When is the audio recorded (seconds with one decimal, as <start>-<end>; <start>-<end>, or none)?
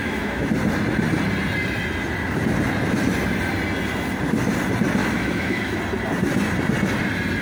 0.5-5.0; 5.8-7.4